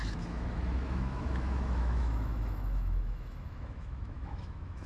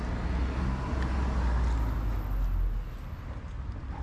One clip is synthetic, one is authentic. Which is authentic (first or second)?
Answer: second